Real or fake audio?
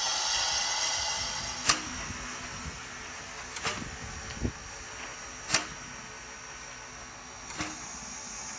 real